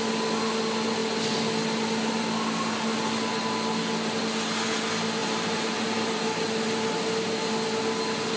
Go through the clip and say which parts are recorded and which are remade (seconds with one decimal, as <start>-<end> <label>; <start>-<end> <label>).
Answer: 0.0-5.2 recorded; 5.2-6.2 remade; 6.2-8.4 recorded